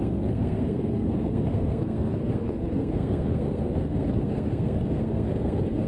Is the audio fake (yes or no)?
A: yes